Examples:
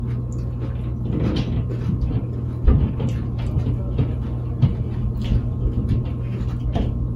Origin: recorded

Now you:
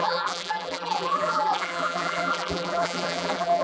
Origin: remade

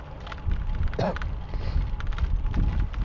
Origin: recorded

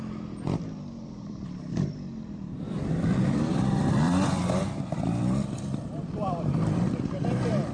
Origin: remade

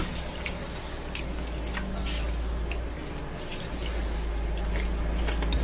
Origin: recorded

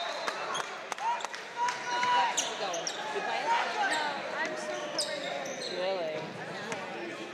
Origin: recorded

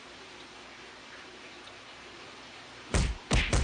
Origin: recorded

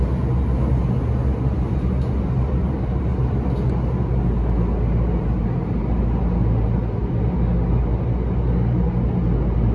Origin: recorded